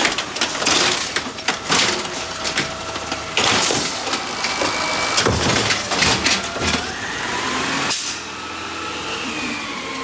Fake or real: real